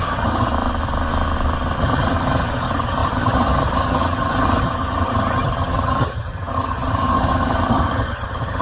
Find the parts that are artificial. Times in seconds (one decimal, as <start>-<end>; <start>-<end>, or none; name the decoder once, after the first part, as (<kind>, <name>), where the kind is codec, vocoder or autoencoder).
0.0-0.5 (vocoder, HiFi-GAN); 1.8-8.6